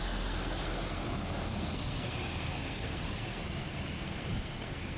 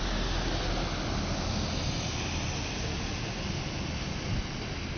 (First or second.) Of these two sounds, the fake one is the first